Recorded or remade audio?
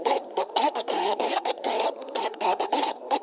remade